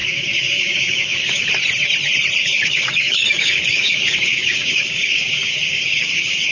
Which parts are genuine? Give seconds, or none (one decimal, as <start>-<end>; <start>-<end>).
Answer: 1.5-2.4